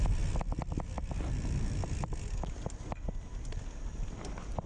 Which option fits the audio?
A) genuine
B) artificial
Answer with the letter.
A